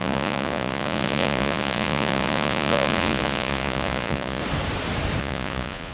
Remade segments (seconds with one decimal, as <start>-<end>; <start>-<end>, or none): 0.0-4.4; 5.2-5.9